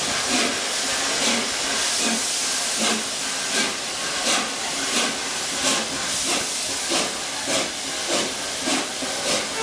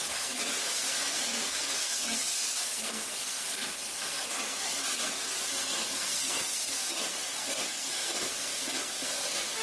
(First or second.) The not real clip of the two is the second